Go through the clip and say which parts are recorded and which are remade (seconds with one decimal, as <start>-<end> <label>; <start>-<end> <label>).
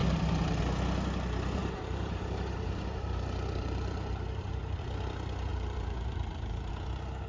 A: 0.0-1.6 recorded; 1.6-4.8 remade; 4.8-5.5 recorded; 5.5-6.7 remade; 6.7-7.3 recorded